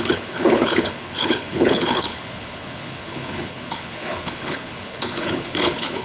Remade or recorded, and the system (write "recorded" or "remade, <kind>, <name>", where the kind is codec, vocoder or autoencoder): remade, codec, HILCodec